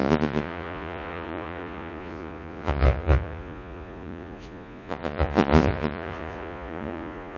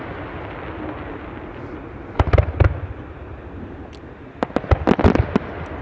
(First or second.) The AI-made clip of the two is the first